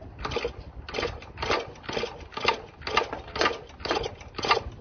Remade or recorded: recorded